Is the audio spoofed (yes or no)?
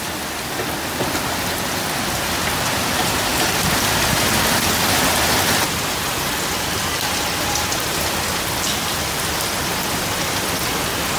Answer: no